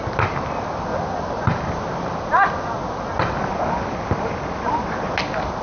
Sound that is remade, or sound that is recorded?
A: recorded